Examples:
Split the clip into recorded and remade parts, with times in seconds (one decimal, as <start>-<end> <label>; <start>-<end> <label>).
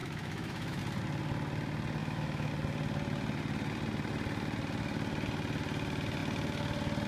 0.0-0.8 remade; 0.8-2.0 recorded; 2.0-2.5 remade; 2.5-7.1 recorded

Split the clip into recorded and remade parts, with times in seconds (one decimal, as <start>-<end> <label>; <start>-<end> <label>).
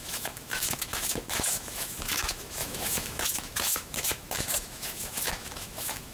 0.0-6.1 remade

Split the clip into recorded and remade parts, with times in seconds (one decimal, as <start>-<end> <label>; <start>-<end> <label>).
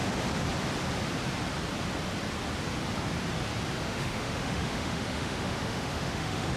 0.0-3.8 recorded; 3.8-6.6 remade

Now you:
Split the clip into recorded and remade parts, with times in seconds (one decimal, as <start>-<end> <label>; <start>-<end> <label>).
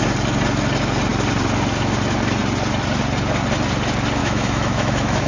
0.0-4.2 recorded; 4.2-5.3 remade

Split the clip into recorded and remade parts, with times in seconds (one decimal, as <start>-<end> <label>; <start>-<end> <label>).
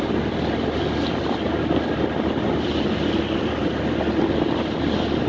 0.0-5.3 recorded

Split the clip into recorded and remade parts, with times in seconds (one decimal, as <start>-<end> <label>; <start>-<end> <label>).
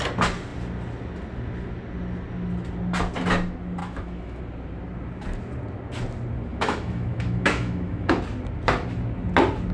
0.0-3.8 recorded; 3.8-4.4 remade; 4.4-6.5 recorded; 6.5-8.1 remade; 8.1-9.7 recorded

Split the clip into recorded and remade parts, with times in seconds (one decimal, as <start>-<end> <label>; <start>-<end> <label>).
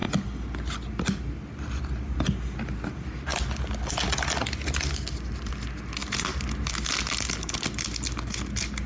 0.0-8.9 recorded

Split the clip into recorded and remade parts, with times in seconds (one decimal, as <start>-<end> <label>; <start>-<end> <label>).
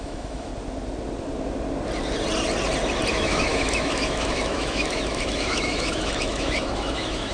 0.0-0.5 remade; 0.5-3.1 recorded; 3.1-7.3 remade